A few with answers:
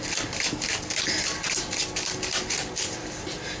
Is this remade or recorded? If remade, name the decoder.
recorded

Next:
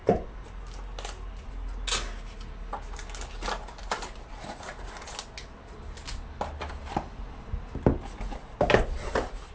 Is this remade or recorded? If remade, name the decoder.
recorded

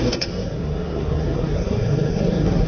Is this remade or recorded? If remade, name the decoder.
remade, codec, SNAC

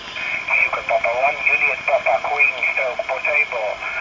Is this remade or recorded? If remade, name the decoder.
recorded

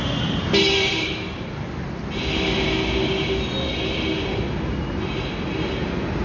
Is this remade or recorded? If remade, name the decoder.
recorded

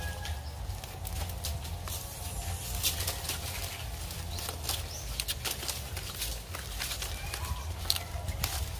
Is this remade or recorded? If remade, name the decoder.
recorded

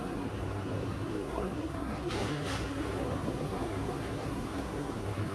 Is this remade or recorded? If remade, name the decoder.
remade, codec, SNAC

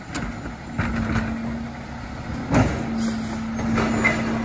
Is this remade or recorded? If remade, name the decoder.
recorded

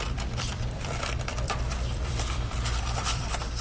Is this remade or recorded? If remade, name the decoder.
remade, vocoder, BigVGAN v2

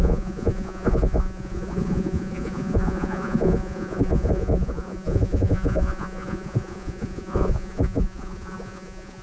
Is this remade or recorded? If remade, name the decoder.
remade, vocoder, Vocos